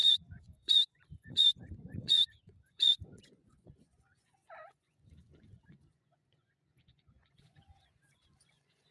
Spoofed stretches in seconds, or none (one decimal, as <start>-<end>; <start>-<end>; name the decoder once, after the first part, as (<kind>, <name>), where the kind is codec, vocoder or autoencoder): 0.0-8.9 (vocoder, Vocos)